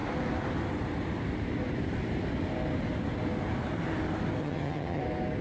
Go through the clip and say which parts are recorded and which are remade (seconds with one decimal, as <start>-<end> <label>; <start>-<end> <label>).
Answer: 0.0-4.4 recorded; 4.4-5.0 remade; 5.0-5.4 recorded